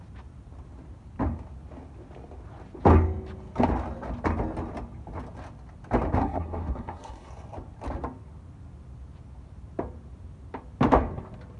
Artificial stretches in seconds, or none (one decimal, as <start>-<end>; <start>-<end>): 6.2-7.3